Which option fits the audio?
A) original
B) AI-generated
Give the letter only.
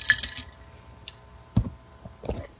A